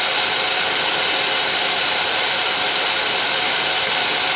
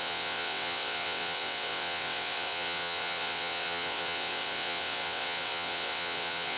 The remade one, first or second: second